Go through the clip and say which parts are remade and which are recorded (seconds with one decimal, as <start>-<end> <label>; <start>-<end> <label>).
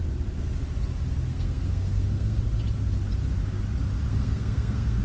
0.0-1.3 recorded; 1.3-2.4 remade; 2.4-4.1 recorded; 4.1-5.0 remade